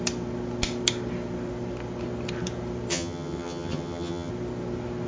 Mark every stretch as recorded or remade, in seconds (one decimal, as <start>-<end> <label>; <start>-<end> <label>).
0.0-2.9 recorded; 2.9-4.3 remade; 4.3-5.1 recorded